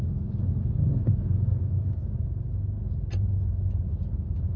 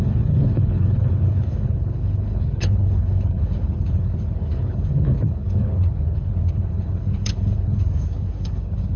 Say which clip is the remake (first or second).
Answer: second